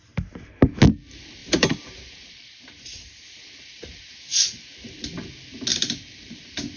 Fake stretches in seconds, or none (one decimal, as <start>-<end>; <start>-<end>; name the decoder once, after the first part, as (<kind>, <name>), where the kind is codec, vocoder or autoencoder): 1.4-4.6 (vocoder, BigVGAN v2); 5.7-6.8